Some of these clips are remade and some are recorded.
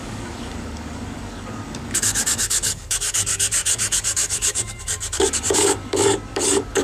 remade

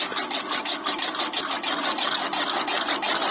recorded